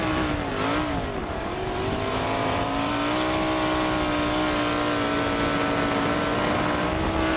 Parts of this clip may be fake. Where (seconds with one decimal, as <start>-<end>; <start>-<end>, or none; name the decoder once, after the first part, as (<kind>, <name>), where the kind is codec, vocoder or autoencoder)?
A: 1.2-3.0 (vocoder, BigVGAN v2)